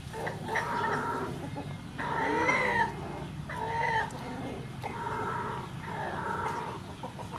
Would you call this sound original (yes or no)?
yes